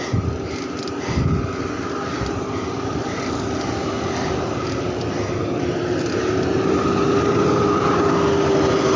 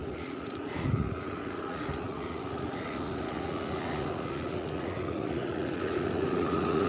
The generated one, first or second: second